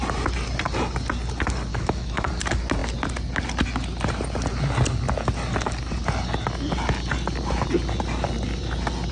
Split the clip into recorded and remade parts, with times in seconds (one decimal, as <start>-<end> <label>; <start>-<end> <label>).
0.0-1.7 recorded; 1.7-2.3 remade; 2.3-9.1 recorded